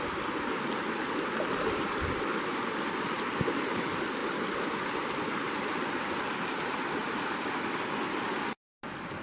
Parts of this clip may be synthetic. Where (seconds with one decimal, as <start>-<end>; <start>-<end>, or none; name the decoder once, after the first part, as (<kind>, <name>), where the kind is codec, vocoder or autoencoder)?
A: none